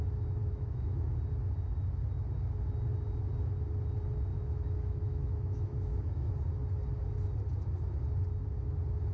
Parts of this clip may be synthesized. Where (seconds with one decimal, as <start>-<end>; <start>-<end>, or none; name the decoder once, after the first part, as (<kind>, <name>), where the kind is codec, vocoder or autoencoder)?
0.4-1.1 (autoencoder, DAC-VAE); 4.3-6.3

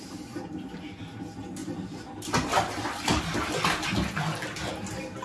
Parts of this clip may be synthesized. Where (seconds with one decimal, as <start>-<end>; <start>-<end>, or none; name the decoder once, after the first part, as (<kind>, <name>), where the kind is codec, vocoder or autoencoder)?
none

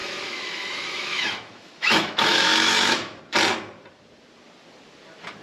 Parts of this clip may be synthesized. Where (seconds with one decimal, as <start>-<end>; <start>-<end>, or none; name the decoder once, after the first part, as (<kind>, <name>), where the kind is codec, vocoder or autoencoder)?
0.0-3.2 (autoencoder, DAC-VAE)

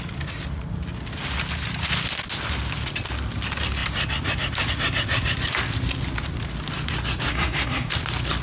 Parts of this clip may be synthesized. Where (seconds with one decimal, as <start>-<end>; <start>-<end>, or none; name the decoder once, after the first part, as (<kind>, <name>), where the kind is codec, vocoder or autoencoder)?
7.3-7.9 (codec, SNAC)

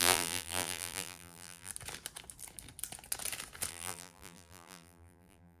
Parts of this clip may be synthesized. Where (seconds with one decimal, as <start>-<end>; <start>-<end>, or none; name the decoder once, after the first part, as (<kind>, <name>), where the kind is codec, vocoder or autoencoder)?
0.0-1.7 (vocoder, BigVGAN v2); 3.7-5.6

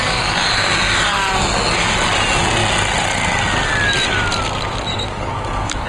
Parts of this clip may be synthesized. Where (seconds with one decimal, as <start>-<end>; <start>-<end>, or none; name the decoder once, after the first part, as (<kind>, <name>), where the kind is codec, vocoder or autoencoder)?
4.9-5.9 (codec, DAC)